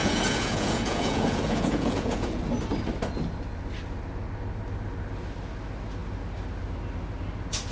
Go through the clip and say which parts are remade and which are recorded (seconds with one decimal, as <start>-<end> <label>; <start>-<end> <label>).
0.0-2.4 remade; 2.4-7.7 recorded